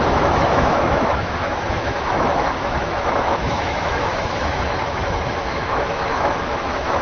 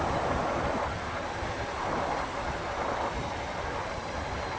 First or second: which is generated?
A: first